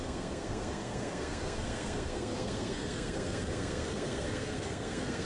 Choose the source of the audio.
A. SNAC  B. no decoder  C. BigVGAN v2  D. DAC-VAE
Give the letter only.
A